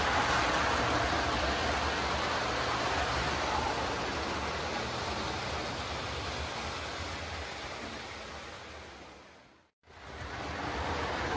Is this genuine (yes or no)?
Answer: yes